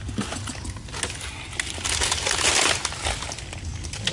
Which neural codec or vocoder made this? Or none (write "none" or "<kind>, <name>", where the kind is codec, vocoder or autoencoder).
none